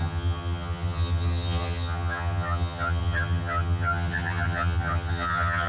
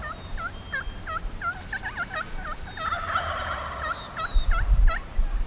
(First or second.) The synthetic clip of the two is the first